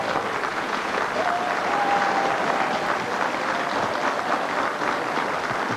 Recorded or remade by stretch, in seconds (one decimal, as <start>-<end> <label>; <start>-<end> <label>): 0.0-0.5 recorded; 0.5-1.0 remade; 1.0-5.8 recorded